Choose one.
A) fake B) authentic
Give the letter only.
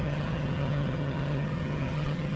A